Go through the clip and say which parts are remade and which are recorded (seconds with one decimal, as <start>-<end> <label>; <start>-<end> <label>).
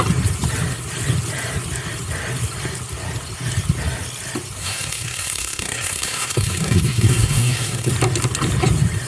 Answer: 0.0-4.6 recorded; 4.6-7.9 remade; 7.9-9.1 recorded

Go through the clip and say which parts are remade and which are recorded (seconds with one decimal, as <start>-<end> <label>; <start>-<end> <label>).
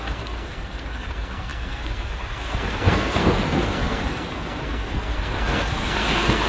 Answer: 0.0-6.5 remade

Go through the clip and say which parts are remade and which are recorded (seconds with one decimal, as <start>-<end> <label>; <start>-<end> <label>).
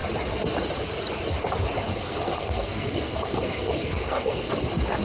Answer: 0.0-1.9 recorded; 1.9-4.5 remade; 4.5-5.0 recorded